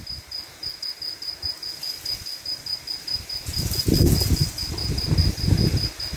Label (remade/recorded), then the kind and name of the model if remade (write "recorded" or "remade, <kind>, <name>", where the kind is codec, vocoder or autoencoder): recorded